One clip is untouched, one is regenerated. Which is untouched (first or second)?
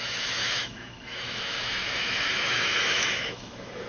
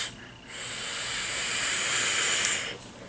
second